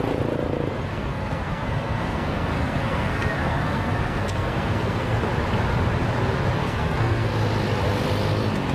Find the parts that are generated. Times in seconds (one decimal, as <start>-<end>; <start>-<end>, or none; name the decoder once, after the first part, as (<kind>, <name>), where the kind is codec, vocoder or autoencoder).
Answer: 0.9-5.2 (codec, SNAC); 6.6-7.3